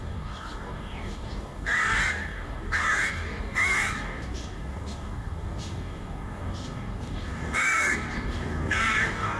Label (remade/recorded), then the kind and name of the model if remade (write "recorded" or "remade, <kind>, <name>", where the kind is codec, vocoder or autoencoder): remade, codec, DAC